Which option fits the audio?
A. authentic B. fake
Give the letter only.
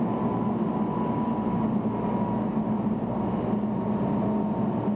A